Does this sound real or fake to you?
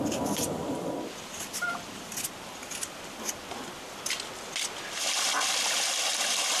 real